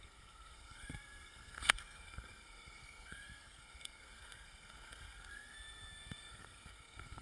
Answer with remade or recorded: remade